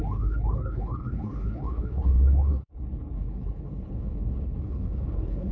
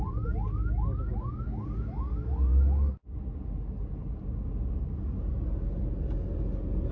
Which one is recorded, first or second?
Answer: second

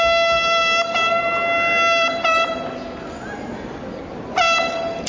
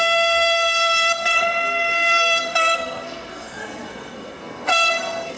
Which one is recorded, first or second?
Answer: first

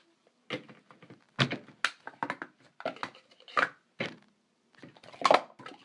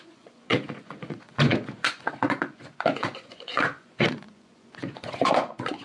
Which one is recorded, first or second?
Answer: first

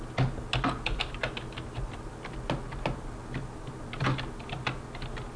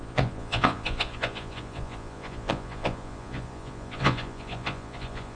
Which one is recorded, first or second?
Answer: first